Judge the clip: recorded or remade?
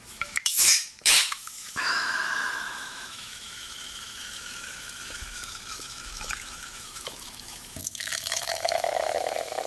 remade